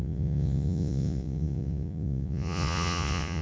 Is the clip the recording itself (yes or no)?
no